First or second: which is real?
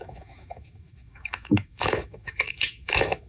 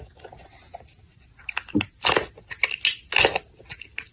second